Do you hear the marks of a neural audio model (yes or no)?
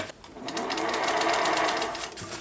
no